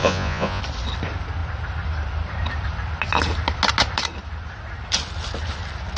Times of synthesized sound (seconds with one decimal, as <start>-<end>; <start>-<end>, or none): 0.0-0.6